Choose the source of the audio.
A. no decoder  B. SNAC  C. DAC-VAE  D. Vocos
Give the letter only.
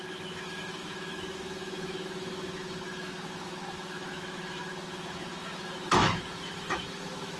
C